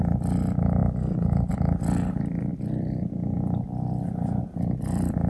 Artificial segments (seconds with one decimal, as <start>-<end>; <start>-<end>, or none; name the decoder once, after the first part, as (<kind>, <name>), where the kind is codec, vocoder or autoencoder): none